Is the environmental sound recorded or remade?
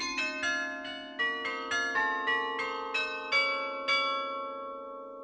recorded